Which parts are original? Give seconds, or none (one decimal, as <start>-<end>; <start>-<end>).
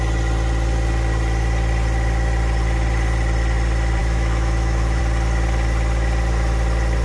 0.0-4.0; 5.0-7.0